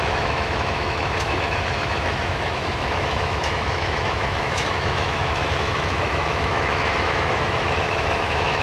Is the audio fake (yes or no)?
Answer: yes